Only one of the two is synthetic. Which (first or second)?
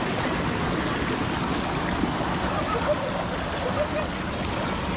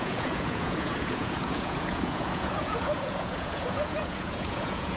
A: second